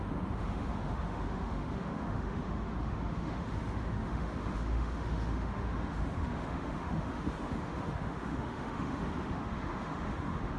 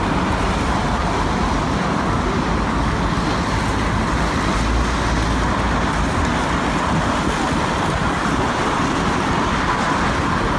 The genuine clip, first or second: second